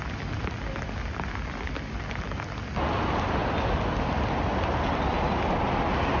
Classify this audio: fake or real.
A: real